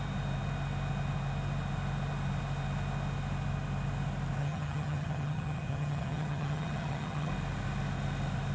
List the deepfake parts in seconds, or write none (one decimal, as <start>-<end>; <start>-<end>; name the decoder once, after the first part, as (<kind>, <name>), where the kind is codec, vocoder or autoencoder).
4.4-7.3 (vocoder, HiFi-GAN)